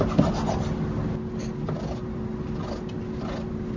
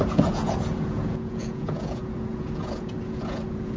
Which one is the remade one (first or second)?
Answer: second